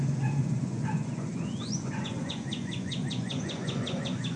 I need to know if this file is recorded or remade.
remade